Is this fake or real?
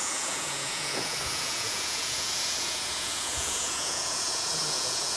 fake